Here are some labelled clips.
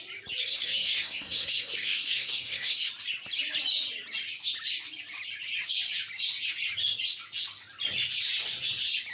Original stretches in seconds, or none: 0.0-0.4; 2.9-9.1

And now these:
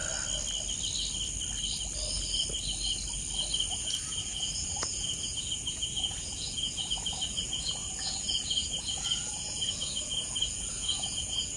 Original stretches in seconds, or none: 0.0-3.7

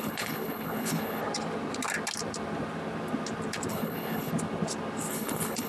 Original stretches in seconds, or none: 1.2-3.7; 4.3-5.1

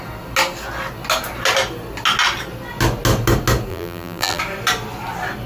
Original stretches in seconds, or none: 0.0-3.7; 4.4-5.5

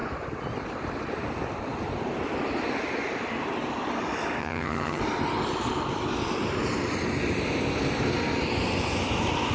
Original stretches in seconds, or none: 0.0-4.4; 5.0-9.5

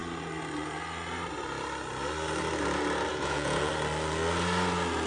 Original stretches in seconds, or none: 0.0-3.1; 3.7-5.1

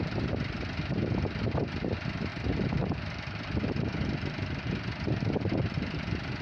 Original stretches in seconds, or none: 0.0-2.3

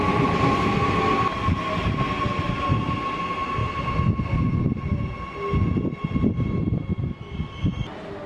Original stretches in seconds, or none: 0.0-8.3